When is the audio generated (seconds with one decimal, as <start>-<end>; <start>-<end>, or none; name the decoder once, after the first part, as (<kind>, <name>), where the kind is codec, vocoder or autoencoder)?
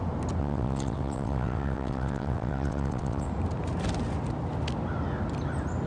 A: 0.4-3.3 (vocoder, WaveNeXt)